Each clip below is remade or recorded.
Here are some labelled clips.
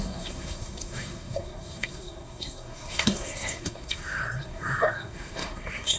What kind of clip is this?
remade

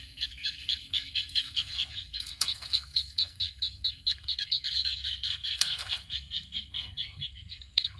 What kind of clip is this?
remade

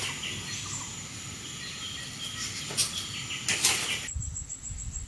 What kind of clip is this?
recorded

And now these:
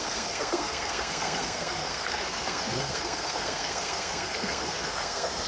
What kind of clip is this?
remade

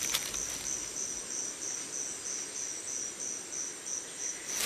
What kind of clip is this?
recorded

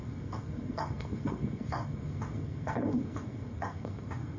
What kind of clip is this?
remade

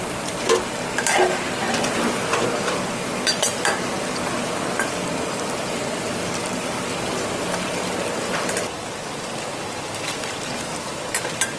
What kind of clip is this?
recorded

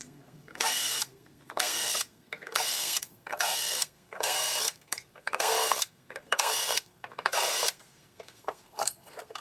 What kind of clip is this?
remade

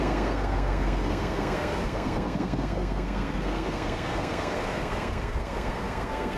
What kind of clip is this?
remade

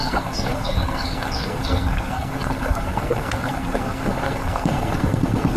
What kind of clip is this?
remade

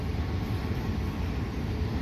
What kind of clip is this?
recorded